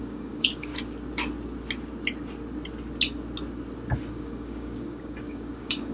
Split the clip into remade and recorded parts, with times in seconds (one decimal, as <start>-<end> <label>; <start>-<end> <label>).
0.0-0.7 remade; 0.7-4.1 recorded; 4.1-5.9 remade